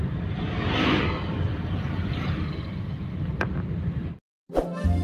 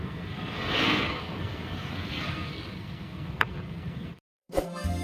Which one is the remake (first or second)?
second